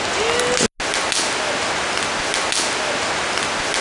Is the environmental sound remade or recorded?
recorded